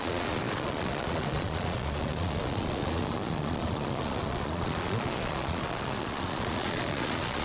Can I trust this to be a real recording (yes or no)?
no